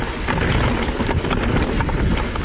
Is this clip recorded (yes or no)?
yes